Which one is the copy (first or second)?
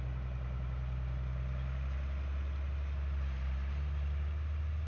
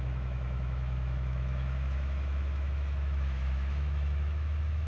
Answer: second